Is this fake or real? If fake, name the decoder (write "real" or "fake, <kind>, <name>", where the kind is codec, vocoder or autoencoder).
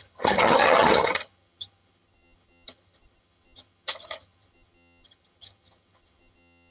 fake, vocoder, HiFi-GAN